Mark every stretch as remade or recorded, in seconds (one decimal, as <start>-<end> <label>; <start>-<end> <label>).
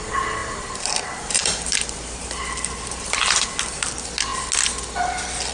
0.0-0.4 recorded; 0.4-3.7 remade; 3.7-5.5 recorded